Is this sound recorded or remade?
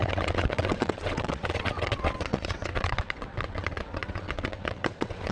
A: remade